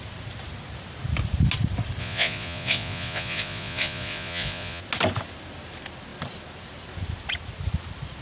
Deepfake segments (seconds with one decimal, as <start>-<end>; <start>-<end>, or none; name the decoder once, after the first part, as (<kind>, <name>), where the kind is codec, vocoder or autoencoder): 2.0-4.8 (vocoder, Vocos)